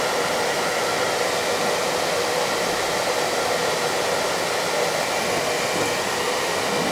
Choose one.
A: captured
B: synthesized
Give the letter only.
A